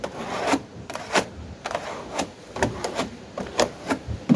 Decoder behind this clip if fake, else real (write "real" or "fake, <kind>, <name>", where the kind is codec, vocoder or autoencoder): fake, vocoder, BigVGAN v2